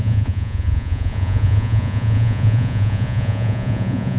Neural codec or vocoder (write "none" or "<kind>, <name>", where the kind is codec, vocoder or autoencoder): vocoder, Vocos